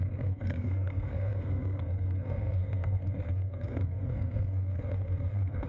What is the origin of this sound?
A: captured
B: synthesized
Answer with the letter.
B